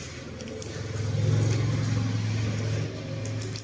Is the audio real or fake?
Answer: real